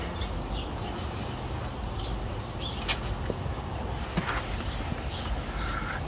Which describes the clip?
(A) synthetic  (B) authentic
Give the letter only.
B